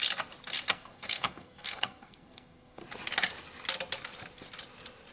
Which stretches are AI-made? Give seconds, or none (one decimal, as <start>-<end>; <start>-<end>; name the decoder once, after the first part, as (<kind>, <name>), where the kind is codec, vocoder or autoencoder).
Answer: 0.7-2.8 (codec, SNAC)